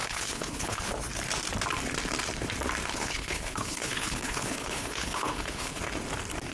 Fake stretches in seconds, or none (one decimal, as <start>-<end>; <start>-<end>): 0.0-0.9; 2.9-5.8